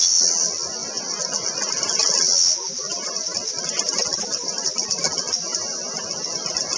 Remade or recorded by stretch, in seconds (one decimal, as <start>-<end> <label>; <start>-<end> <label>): 0.0-6.8 recorded